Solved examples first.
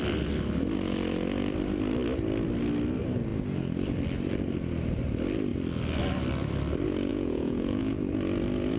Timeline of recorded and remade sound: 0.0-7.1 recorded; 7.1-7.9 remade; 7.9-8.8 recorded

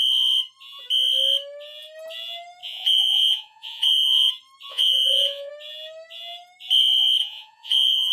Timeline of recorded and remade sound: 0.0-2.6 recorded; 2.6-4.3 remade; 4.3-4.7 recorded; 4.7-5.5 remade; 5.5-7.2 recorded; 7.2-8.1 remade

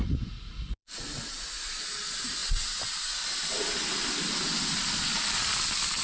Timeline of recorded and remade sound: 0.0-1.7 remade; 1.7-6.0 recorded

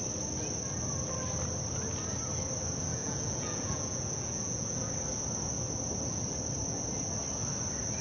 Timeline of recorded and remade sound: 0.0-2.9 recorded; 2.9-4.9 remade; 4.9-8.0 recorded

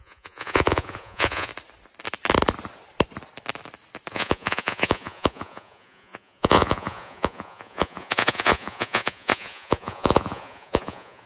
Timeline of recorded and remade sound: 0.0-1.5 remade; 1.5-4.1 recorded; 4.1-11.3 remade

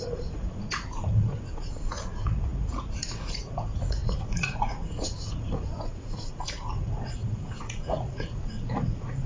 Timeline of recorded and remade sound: 0.0-9.3 remade